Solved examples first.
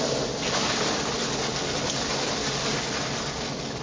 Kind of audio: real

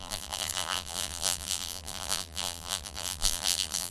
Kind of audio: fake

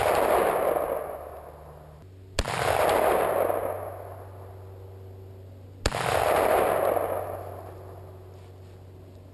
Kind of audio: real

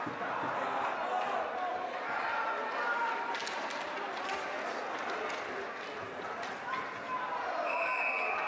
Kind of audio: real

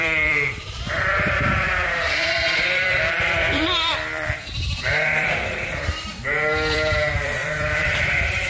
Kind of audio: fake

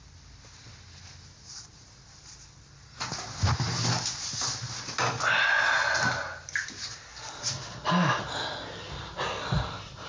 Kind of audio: real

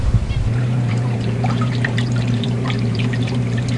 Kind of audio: fake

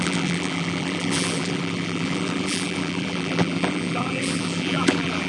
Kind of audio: fake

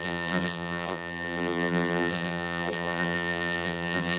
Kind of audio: fake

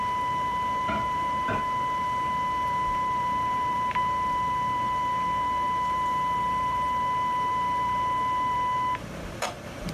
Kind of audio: fake